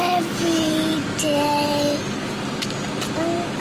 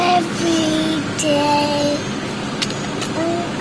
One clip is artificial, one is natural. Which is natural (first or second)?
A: second